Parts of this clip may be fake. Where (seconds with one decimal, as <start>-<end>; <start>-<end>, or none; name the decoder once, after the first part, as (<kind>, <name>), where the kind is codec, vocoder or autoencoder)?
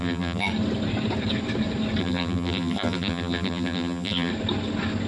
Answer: 0.0-0.5 (vocoder, BigVGAN v2); 2.0-4.3